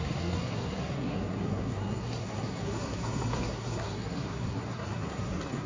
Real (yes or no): no